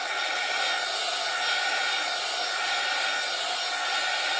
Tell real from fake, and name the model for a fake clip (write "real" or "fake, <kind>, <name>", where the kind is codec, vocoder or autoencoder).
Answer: real